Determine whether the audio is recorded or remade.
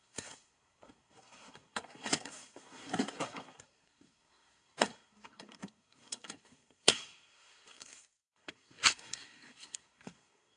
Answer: remade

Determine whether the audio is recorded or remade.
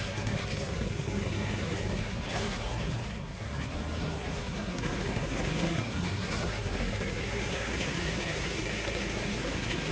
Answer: remade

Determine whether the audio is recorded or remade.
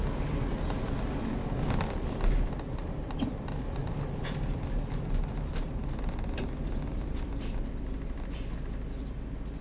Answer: recorded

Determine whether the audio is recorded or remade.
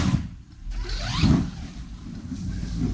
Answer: recorded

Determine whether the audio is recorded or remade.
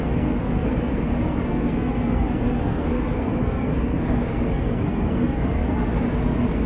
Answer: remade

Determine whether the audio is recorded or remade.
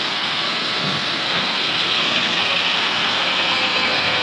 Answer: remade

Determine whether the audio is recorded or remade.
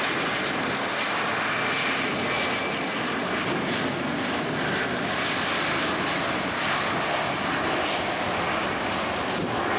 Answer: recorded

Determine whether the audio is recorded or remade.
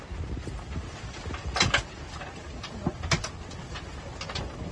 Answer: recorded